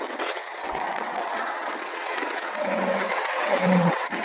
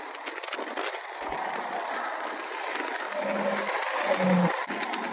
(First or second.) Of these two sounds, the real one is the second